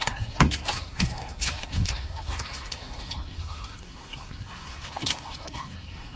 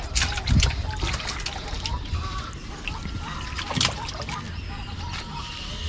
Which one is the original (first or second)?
second